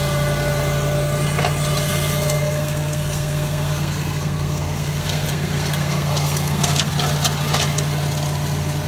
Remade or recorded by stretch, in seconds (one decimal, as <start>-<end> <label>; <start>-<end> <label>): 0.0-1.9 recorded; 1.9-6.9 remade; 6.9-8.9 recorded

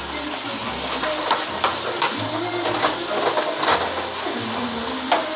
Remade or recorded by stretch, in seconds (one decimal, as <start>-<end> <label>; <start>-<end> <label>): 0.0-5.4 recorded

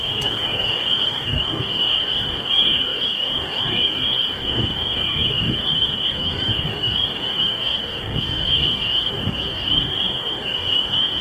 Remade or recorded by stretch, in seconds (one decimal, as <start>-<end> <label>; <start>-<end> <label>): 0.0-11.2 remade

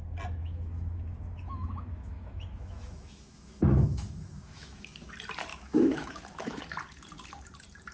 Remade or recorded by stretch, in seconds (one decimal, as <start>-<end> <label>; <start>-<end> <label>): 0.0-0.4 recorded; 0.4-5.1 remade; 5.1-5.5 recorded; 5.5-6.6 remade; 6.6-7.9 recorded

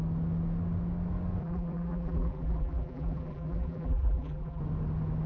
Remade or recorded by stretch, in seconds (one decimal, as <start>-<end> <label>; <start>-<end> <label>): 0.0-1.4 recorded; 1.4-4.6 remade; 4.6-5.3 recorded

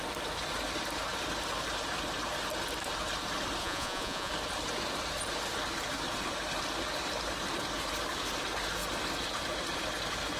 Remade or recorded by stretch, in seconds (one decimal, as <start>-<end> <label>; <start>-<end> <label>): 0.0-3.6 recorded; 3.6-4.3 remade; 4.3-10.4 recorded

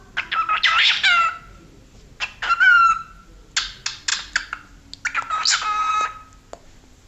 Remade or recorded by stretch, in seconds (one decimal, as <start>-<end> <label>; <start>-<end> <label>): 0.0-7.1 recorded